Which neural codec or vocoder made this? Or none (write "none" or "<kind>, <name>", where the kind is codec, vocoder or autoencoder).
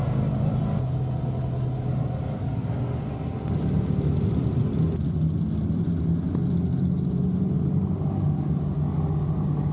none